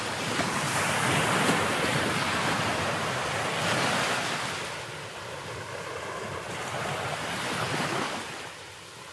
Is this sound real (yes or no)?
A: yes